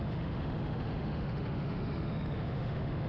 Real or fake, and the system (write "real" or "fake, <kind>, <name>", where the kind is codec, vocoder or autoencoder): fake, autoencoder, DAC-VAE